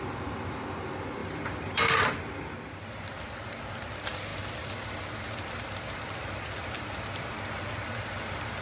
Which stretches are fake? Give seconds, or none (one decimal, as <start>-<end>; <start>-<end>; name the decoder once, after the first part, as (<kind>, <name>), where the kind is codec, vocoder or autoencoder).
none

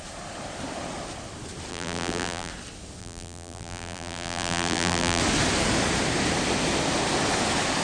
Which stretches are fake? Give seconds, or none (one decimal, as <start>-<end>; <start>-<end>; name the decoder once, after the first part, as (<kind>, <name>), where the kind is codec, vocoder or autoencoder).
1.7-2.5 (vocoder, BigVGAN v2); 3.0-5.2